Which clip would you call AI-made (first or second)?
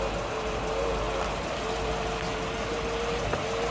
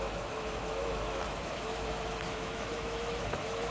second